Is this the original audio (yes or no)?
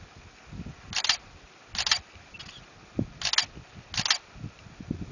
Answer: yes